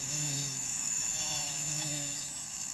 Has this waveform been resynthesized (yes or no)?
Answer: yes